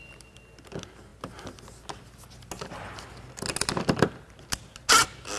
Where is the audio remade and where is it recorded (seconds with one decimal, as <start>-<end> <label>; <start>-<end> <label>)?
0.0-5.4 recorded